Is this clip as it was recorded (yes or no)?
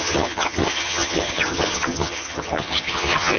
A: no